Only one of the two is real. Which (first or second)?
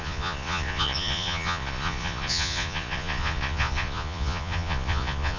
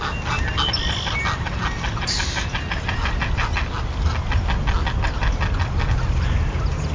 second